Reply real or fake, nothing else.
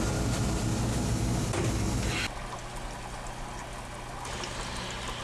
real